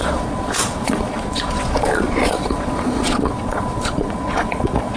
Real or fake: fake